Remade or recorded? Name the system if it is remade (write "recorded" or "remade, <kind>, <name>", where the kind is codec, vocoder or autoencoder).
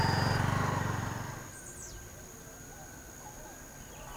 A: recorded